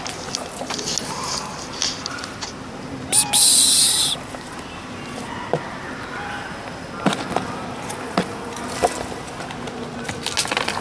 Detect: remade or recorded recorded